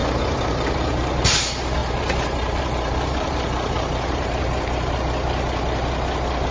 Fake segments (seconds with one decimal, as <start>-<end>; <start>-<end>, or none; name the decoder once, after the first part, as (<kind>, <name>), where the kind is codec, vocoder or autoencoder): 0.0-1.2 (vocoder, BigVGAN v2); 1.8-5.0